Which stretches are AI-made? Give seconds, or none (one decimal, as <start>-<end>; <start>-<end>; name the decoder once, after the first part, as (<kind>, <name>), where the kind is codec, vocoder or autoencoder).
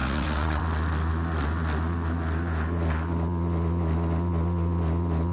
0.0-0.6 (vocoder, WaveNeXt)